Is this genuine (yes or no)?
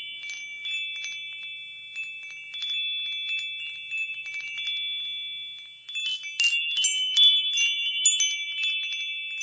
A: yes